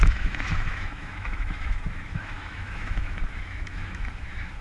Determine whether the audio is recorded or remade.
remade